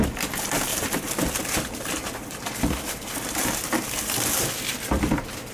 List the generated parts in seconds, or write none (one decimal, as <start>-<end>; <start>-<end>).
0.7-4.0